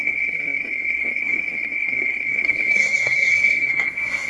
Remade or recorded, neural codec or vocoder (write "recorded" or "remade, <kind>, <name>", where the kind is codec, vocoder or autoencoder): remade, codec, SNAC